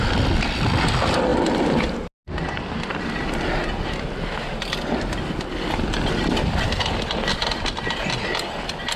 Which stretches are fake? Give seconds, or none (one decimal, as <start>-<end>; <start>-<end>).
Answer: none